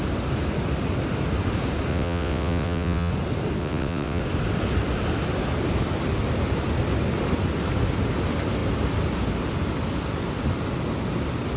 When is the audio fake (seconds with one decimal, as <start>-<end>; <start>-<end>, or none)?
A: 1.9-3.1; 3.6-4.2